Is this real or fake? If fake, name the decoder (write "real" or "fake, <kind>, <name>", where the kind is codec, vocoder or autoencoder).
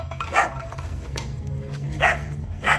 fake, codec, SNAC